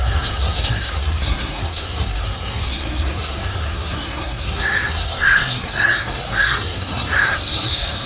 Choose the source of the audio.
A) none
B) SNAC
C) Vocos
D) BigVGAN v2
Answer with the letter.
B